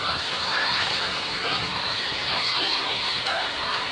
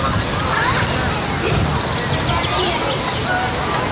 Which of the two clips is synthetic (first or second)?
first